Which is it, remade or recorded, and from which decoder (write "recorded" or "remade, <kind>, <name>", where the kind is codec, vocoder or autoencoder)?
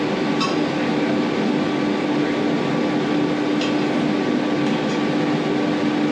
recorded